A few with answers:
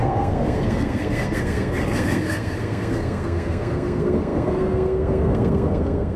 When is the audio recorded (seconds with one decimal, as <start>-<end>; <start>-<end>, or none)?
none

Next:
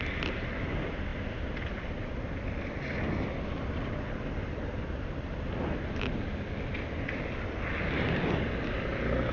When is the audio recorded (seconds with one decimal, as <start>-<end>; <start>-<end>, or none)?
0.0-9.3

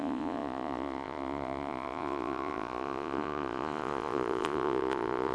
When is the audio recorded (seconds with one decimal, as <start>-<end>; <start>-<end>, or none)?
none

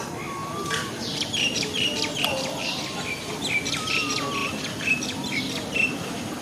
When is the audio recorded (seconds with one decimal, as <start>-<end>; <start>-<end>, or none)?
0.0-6.4

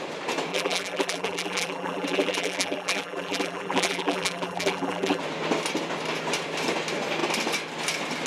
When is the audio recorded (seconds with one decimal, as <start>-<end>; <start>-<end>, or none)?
0.0-0.5; 5.2-8.3